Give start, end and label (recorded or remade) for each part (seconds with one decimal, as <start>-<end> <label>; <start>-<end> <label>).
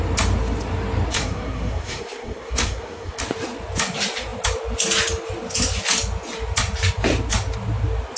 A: 0.0-1.1 recorded; 1.1-3.2 remade; 3.2-8.2 recorded